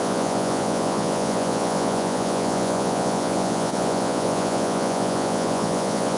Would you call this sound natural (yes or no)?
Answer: no